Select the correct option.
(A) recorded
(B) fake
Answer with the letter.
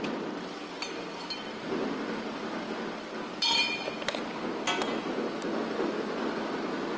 A